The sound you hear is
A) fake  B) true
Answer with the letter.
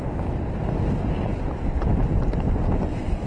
B